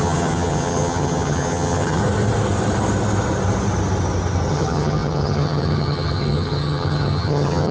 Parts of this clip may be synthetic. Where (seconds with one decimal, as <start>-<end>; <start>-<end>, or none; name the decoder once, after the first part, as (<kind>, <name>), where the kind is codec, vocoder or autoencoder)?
0.0-2.0 (vocoder, HiFi-GAN); 4.5-7.7